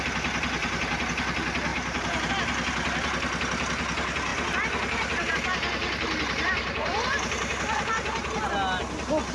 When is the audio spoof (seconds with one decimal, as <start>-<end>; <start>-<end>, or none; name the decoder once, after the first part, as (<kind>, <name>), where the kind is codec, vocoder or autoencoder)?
0.6-1.1 (vocoder, BigVGAN v2); 1.7-2.3; 4.3-5.3; 5.8-7.9